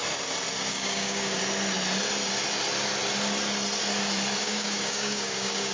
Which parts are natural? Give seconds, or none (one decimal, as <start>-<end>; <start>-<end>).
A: 0.0-0.7; 1.4-4.4